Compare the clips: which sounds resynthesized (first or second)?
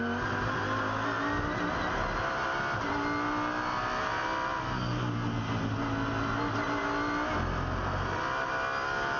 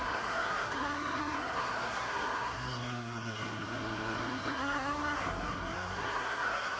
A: second